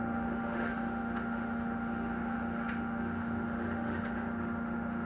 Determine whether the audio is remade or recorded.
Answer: remade